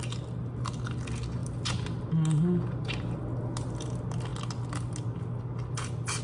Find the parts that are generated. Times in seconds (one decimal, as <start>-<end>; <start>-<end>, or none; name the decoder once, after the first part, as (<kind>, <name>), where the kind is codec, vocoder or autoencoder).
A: none